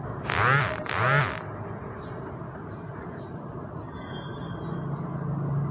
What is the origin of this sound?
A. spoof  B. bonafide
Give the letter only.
B